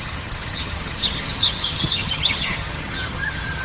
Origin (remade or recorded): remade